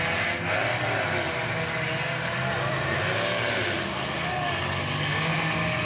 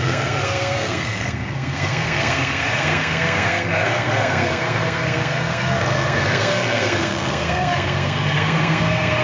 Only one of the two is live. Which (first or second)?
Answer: first